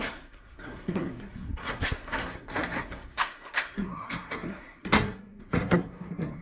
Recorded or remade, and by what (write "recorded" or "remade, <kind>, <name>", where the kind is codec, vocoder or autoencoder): remade, codec, SNAC